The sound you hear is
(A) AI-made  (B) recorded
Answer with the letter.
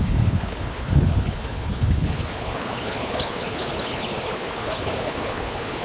A